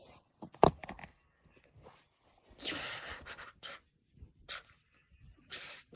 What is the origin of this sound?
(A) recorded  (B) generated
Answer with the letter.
A